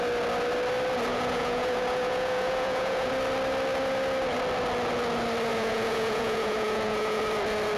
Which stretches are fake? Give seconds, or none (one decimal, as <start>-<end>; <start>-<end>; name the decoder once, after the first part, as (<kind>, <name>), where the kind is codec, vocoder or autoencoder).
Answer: 1.1-3.1 (vocoder, Vocos); 5.5-7.2